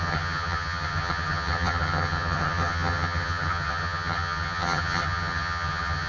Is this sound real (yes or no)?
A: no